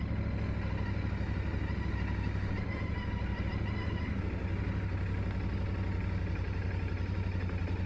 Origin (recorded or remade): recorded